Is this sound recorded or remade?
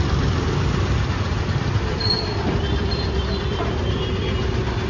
recorded